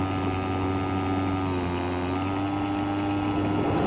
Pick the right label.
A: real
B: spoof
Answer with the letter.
A